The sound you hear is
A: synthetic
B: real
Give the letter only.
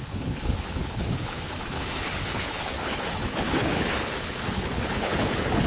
A